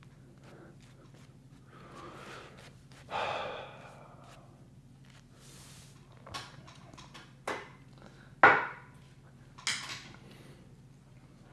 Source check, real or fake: real